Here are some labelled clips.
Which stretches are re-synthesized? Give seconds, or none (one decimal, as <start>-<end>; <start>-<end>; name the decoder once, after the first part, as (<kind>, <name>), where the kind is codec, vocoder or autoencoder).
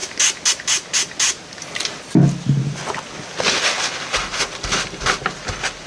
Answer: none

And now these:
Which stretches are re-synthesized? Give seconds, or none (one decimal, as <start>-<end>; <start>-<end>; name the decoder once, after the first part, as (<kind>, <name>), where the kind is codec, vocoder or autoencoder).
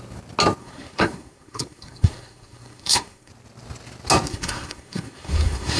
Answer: 0.6-3.3 (codec, SNAC); 4.3-5.8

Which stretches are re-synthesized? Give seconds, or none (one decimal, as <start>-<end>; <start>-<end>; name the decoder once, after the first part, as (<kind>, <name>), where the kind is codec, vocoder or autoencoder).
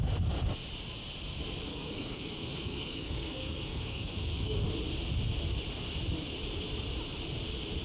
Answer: 1.7-4.6 (codec, SNAC)